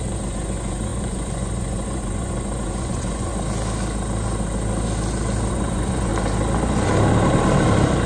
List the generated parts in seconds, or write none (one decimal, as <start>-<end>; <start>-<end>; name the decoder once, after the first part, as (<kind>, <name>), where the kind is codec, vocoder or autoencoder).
0.0-3.3 (vocoder, Vocos); 5.5-6.1